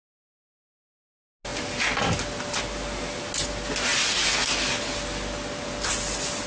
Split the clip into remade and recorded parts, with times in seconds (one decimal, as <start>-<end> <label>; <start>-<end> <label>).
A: 0.0-6.5 recorded